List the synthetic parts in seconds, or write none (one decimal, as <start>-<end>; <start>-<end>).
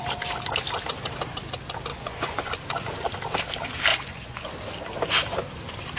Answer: 1.9-2.5; 3.9-4.5